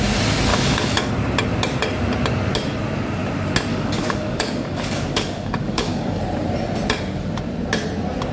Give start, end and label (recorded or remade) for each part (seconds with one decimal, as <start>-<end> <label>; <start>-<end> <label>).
0.0-0.5 recorded; 0.5-1.1 remade; 1.1-3.7 recorded; 3.7-6.2 remade; 6.2-8.3 recorded